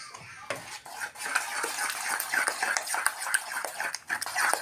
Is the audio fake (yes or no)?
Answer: no